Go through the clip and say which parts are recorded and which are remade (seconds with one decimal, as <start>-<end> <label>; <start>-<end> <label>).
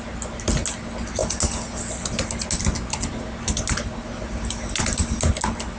0.0-5.8 recorded